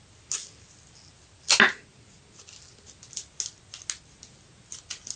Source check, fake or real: real